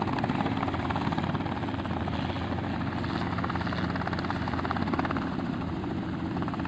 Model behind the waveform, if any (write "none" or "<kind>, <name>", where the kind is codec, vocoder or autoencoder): vocoder, BigVGAN v2